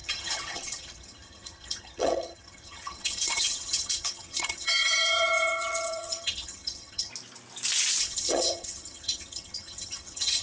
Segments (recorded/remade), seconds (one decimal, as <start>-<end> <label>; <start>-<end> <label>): 0.0-7.1 remade; 7.1-8.0 recorded; 8.0-10.4 remade